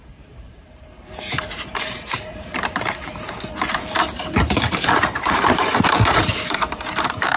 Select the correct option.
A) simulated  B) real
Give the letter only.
A